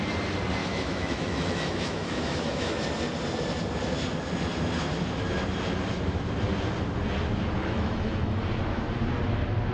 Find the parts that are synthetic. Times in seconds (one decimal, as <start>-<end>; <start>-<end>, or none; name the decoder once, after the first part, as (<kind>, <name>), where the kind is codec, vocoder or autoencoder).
0.6-2.8 (autoencoder, DAC-VAE); 7.6-8.4